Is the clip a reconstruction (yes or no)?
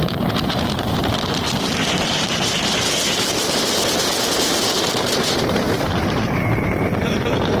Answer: yes